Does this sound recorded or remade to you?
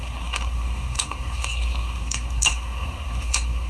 remade